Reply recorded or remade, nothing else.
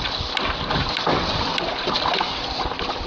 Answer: recorded